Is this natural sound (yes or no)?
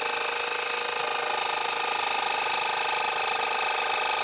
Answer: yes